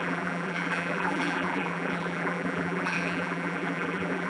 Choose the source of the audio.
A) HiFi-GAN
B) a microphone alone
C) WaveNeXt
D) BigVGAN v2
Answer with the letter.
D